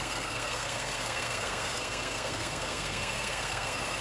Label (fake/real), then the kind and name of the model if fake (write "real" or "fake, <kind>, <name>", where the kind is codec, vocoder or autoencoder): fake, codec, SNAC